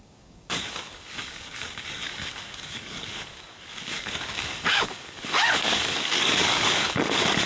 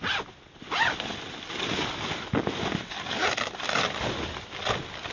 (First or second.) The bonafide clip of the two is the second